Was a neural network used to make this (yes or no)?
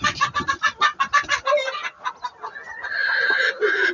no